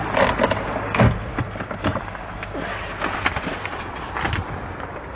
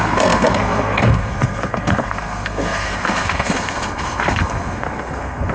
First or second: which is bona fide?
first